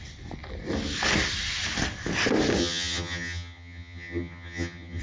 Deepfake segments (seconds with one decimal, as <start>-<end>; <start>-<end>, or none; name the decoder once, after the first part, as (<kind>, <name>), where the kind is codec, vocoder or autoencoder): 2.6-5.0 (vocoder, HiFi-GAN)